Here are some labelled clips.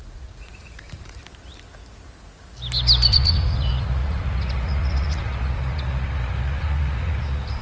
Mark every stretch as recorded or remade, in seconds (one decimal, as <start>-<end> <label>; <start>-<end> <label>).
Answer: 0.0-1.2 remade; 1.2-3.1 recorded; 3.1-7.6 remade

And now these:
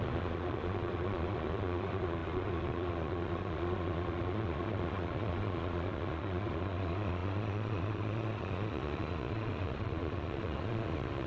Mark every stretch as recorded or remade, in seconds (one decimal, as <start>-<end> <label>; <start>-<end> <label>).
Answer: 0.0-11.3 remade

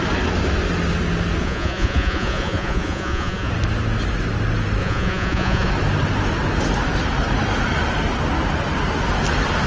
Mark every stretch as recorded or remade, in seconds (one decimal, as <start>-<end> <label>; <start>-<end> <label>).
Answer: 0.0-1.4 recorded; 1.4-3.5 remade; 3.5-4.8 recorded; 4.8-5.7 remade; 5.7-9.7 recorded

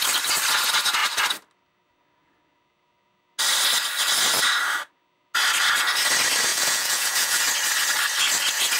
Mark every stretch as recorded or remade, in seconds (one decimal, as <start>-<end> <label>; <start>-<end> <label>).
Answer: 0.0-6.5 recorded; 6.5-7.4 remade; 7.4-8.8 recorded

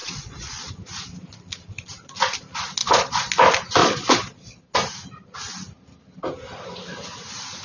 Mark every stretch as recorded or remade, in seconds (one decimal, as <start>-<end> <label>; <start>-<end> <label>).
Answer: 0.0-0.7 remade; 0.7-2.8 recorded; 2.8-3.3 remade; 3.3-3.8 recorded; 3.8-4.7 remade; 4.7-7.6 recorded

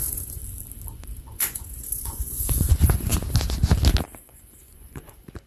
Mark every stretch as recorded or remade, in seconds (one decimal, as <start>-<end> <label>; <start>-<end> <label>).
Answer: 0.0-0.4 remade; 0.4-1.2 recorded; 1.2-3.1 remade; 3.1-4.2 recorded; 4.2-5.5 remade

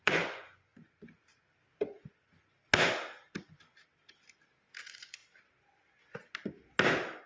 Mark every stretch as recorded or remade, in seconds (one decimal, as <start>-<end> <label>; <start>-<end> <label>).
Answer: 0.0-0.7 remade; 0.7-4.8 recorded; 4.8-5.2 remade; 5.2-7.3 recorded